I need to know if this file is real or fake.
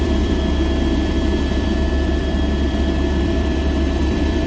fake